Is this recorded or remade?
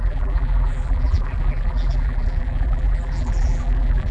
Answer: remade